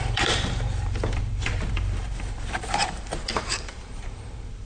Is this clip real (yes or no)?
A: no